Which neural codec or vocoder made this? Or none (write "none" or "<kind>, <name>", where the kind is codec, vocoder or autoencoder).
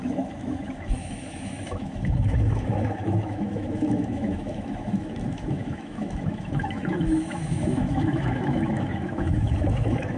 autoencoder, DAC-VAE